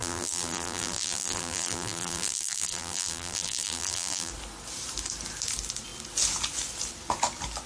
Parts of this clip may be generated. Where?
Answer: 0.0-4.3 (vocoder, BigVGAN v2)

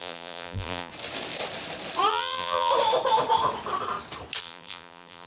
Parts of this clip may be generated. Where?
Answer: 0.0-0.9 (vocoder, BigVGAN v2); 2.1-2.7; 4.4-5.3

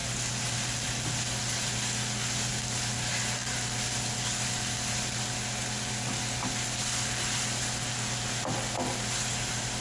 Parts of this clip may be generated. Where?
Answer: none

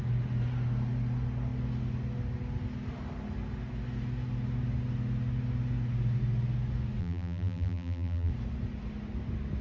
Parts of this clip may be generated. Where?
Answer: 7.0-8.3 (vocoder, BigVGAN v2)

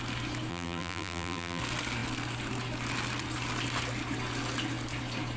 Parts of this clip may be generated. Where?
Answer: 0.5-1.6 (vocoder, BigVGAN v2)

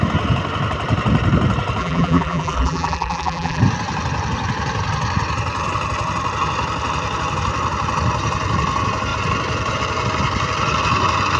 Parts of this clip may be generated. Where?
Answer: 1.8-3.6 (vocoder, BigVGAN v2)

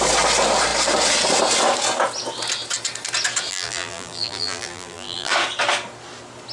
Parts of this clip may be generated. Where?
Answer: 3.5-5.3 (vocoder, BigVGAN v2)